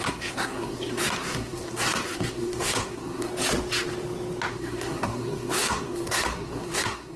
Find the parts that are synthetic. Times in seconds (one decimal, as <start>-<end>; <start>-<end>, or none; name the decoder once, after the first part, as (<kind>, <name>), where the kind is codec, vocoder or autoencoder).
0.0-3.3 (codec, SNAC); 4.5-7.2